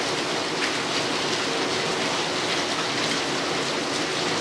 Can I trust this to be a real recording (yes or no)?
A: yes